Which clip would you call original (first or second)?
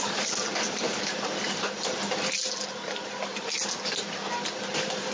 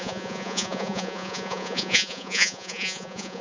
first